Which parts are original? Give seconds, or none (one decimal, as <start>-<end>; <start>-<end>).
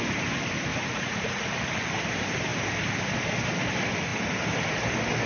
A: 0.0-0.7; 1.4-5.3